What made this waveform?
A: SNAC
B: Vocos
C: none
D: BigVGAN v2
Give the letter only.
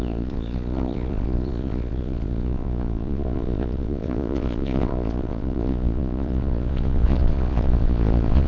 B